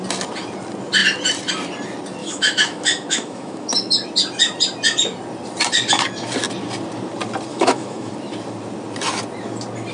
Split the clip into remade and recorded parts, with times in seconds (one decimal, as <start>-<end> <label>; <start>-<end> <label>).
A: 0.0-2.2 recorded; 2.2-3.7 remade; 3.7-7.5 recorded; 7.5-8.1 remade; 8.1-9.9 recorded